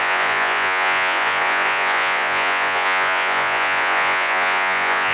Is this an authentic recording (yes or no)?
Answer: no